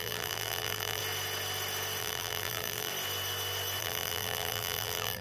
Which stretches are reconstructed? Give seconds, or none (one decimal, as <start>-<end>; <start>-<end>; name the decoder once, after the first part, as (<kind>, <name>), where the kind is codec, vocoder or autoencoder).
0.0-1.0 (vocoder, BigVGAN v2); 2.0-2.9; 3.8-5.2

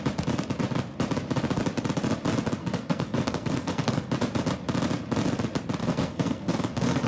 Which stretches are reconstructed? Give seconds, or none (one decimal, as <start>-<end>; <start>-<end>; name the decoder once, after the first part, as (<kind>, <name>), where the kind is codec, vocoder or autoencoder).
2.6-4.1 (codec, SNAC); 5.8-7.1

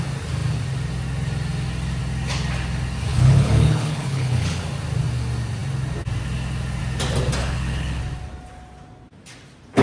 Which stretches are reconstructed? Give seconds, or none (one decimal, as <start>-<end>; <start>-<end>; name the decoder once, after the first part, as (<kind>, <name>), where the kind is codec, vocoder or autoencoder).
3.1-4.6 (codec, HILCodec); 7.4-8.0

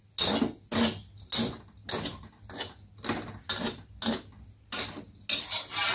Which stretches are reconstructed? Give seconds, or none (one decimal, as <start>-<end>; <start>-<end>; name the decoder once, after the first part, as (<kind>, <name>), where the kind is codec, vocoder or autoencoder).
none

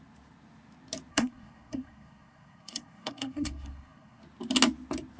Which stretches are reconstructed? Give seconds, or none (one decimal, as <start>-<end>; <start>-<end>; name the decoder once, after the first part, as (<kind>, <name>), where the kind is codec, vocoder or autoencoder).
1.1-4.2 (codec, SNAC)